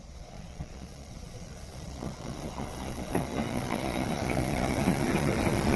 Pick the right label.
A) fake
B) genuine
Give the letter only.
A